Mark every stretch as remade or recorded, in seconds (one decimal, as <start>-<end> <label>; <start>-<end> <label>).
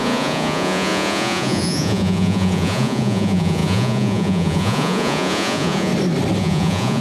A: 0.0-5.9 remade; 5.9-6.4 recorded; 6.4-7.0 remade